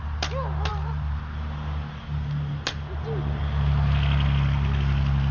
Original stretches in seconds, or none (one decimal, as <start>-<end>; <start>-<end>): 0.0-0.7; 1.2-5.3